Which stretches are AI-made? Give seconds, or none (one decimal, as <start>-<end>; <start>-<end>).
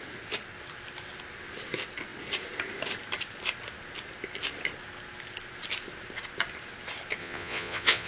7.2-8.1